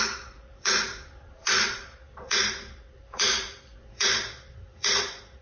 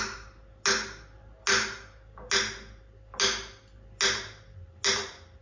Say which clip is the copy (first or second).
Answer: first